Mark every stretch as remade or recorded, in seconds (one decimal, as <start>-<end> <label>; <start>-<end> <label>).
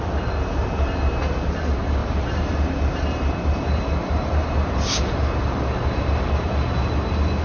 0.0-2.0 recorded; 2.0-6.3 remade; 6.3-7.4 recorded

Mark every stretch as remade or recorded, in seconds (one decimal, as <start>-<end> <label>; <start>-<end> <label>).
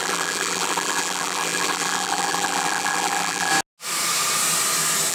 0.0-3.5 remade; 3.5-5.1 recorded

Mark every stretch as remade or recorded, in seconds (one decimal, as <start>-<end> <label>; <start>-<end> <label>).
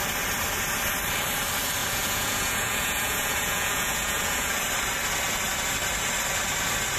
0.0-1.8 recorded; 1.8-4.6 remade; 4.6-7.0 recorded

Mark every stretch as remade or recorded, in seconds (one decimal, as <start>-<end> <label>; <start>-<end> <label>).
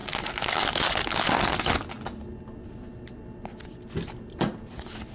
0.0-5.1 recorded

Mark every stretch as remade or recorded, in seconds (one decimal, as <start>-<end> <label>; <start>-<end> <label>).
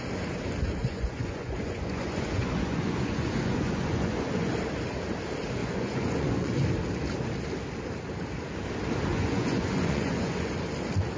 0.0-0.8 recorded; 0.8-4.5 remade; 4.5-5.6 recorded; 5.6-6.5 remade; 6.5-9.1 recorded; 9.1-10.5 remade; 10.5-11.2 recorded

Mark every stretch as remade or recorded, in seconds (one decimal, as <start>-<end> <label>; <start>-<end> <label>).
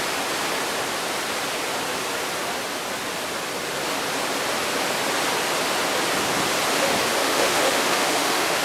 0.0-7.2 recorded; 7.2-8.6 remade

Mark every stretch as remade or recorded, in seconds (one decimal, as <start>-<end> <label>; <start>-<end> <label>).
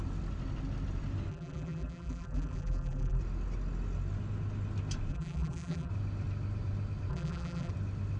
0.0-1.3 recorded; 1.3-3.2 remade; 3.2-5.1 recorded; 5.1-5.9 remade; 5.9-7.1 recorded; 7.1-7.7 remade; 7.7-8.2 recorded